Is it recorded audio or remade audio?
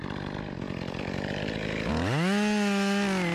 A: recorded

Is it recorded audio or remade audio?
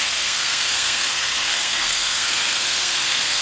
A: remade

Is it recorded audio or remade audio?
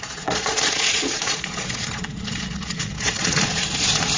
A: remade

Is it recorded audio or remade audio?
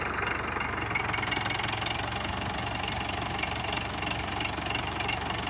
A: recorded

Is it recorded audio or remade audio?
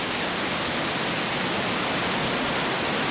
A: recorded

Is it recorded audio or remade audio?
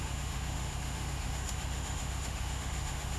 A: remade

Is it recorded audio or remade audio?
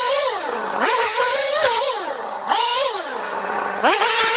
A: remade